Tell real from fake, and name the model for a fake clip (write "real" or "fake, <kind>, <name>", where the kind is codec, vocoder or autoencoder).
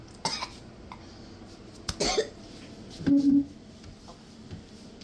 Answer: real